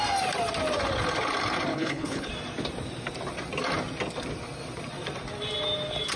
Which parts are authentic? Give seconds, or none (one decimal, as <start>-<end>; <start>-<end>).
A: 0.0-1.7; 2.3-6.2